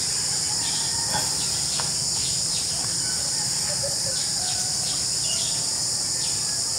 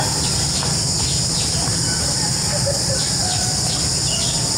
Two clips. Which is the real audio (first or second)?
second